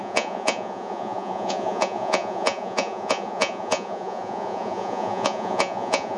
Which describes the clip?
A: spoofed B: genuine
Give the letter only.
A